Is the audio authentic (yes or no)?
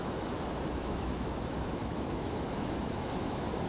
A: no